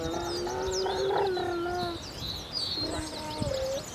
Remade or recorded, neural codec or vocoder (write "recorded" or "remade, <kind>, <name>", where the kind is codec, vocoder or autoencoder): recorded